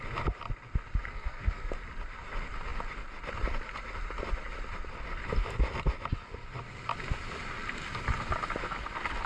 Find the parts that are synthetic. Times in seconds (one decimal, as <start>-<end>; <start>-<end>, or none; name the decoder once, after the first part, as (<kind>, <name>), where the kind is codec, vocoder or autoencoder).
1.1-1.7 (codec, SNAC)